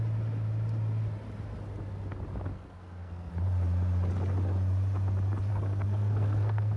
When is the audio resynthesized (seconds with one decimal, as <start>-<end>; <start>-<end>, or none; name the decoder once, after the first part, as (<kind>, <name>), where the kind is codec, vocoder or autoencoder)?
2.5-3.3 (codec, SNAC); 5.5-6.8